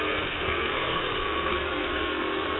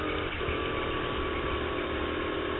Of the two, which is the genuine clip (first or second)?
second